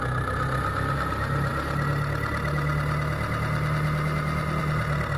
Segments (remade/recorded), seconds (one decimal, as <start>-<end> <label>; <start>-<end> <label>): 0.0-5.2 recorded